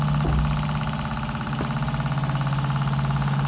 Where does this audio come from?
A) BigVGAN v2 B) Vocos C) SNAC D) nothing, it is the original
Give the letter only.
D